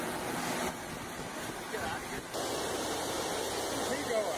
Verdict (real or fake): real